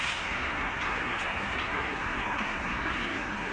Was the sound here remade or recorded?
remade